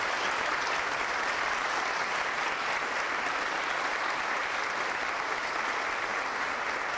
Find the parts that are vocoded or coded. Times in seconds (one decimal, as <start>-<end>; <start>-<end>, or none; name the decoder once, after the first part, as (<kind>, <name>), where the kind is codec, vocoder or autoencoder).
none